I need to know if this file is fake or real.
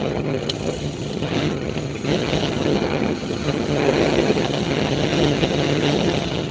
fake